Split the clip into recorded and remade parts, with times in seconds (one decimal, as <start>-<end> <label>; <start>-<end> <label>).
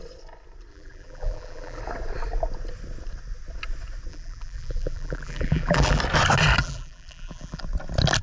0.0-0.7 recorded; 0.7-1.8 remade; 1.8-4.1 recorded; 4.1-6.0 remade; 6.0-6.6 recorded; 6.6-7.6 remade; 7.6-8.2 recorded